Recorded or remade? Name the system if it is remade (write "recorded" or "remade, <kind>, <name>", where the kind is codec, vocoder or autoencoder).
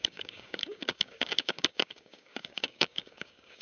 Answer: remade, codec, DAC